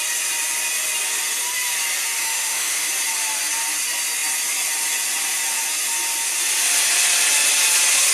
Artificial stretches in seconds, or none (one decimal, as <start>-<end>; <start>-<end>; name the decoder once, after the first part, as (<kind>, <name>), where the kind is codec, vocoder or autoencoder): 2.2-2.9 (autoencoder, DAC-VAE)